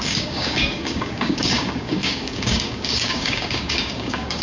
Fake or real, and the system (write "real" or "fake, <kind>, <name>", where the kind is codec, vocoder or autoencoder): fake, codec, DAC